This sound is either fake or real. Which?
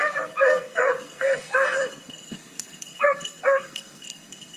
fake